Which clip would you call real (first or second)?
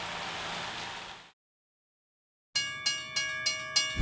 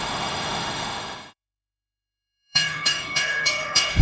first